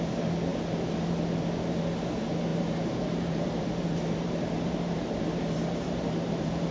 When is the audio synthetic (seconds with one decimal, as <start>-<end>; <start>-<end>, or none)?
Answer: 2.5-6.7